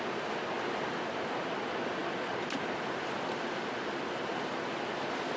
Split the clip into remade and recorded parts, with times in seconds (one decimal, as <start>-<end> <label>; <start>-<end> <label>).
0.0-5.4 recorded